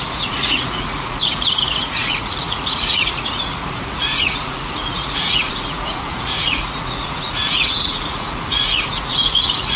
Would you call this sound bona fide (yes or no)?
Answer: no